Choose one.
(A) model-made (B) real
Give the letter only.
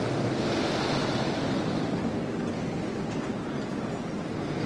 B